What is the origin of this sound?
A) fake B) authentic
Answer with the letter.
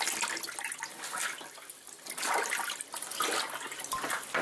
B